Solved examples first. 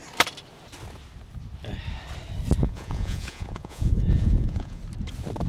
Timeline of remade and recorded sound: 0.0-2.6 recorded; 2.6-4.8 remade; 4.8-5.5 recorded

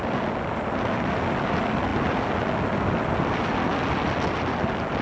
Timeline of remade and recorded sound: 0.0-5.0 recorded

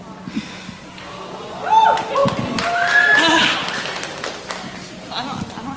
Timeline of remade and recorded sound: 0.0-5.8 recorded

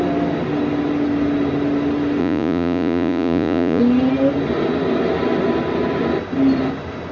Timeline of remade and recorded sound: 0.0-2.2 recorded; 2.2-3.8 remade; 3.8-7.1 recorded

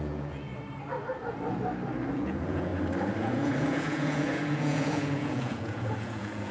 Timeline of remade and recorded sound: 0.0-0.5 remade; 0.5-2.1 recorded; 2.1-2.7 remade; 2.7-3.2 recorded; 3.2-6.5 remade

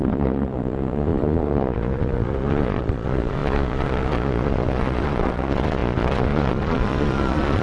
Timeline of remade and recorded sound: 0.0-7.6 remade

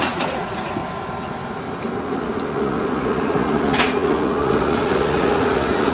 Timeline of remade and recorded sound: 0.0-0.8 remade; 0.8-1.9 recorded; 1.9-5.9 remade